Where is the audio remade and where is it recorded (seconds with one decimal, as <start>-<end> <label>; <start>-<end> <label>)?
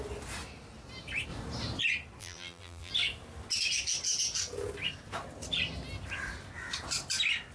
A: 0.0-2.2 recorded; 2.2-2.9 remade; 2.9-7.5 recorded